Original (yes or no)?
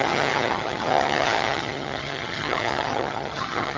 no